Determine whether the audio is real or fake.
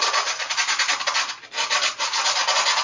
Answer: real